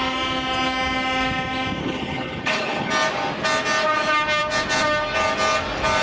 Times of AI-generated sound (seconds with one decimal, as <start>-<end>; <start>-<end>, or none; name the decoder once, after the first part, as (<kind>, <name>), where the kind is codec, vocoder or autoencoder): 1.8-2.9 (codec, HILCodec)